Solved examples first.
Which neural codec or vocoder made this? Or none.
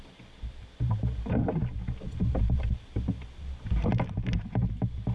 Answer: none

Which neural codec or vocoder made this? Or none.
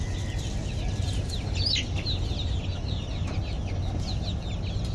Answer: none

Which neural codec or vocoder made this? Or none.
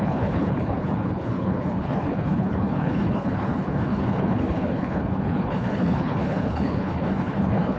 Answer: codec, HILCodec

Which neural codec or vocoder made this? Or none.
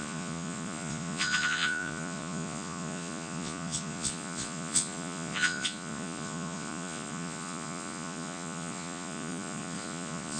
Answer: vocoder, Vocos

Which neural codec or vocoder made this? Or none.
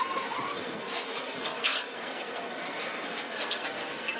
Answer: codec, SNAC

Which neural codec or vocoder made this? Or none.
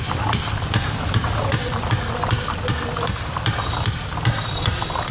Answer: none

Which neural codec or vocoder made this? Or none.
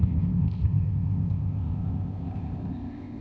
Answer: codec, ZipCodec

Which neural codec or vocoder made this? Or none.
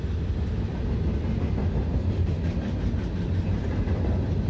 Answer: none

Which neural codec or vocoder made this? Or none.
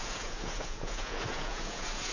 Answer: vocoder, Vocos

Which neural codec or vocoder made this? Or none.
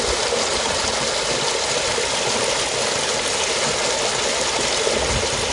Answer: none